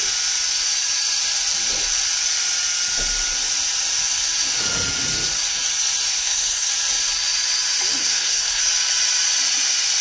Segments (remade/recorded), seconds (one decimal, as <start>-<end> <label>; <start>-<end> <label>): 0.0-6.1 recorded; 6.1-6.7 remade; 6.7-8.0 recorded; 8.0-8.6 remade; 8.6-10.0 recorded